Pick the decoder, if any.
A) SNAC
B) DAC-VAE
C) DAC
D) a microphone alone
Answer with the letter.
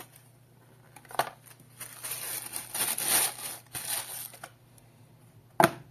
D